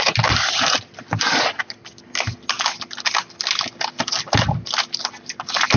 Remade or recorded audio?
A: recorded